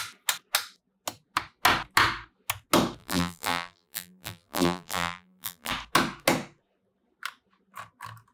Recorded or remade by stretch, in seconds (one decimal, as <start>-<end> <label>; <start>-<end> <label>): 0.0-3.0 recorded; 3.0-5.7 remade; 5.7-8.3 recorded